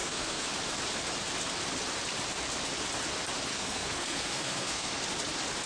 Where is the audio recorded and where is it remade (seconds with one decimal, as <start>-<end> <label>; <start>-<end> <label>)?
0.0-0.5 remade; 0.5-3.5 recorded; 3.5-5.0 remade; 5.0-5.7 recorded